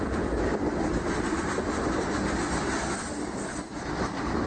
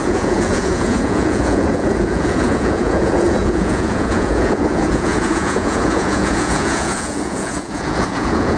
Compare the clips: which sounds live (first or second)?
first